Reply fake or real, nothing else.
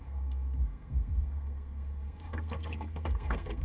fake